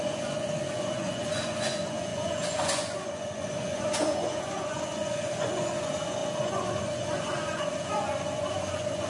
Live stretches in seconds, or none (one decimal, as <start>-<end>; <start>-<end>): none